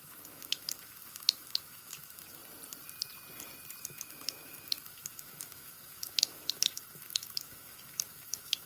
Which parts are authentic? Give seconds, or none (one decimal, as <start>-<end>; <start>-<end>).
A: 2.4-3.8